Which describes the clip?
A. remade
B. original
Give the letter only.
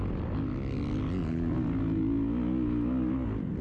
B